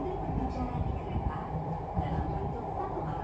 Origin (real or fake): real